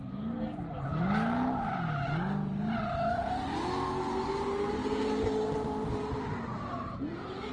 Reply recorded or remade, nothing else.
recorded